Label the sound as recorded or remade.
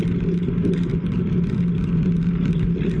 recorded